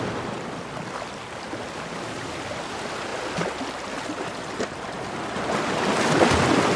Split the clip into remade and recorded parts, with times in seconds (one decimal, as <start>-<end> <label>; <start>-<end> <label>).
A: 0.0-6.8 recorded